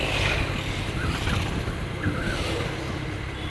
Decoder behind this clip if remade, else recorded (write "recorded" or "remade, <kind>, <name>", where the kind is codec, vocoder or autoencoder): recorded